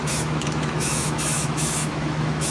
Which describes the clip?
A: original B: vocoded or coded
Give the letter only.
B